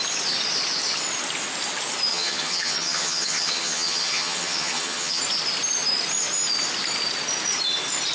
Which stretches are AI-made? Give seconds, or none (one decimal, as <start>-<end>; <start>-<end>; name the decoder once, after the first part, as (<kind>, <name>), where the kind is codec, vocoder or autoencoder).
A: 2.1-5.2 (vocoder, HiFi-GAN)